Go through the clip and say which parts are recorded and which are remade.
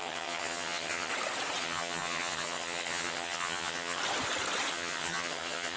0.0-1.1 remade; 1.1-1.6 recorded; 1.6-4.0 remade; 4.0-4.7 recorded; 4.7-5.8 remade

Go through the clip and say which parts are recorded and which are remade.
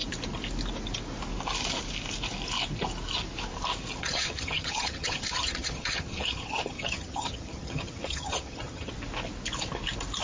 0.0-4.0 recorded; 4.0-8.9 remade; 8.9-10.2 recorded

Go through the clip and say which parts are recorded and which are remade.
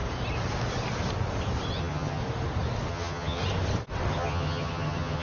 0.0-1.8 recorded; 1.8-2.2 remade; 2.2-2.9 recorded; 2.9-3.4 remade; 3.4-4.1 recorded; 4.1-5.2 remade